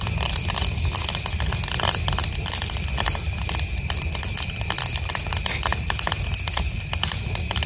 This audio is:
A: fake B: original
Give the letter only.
B